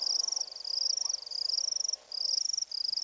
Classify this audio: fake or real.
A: real